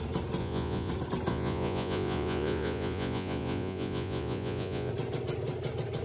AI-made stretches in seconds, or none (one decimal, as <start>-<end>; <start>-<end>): 0.4-0.9; 1.3-4.9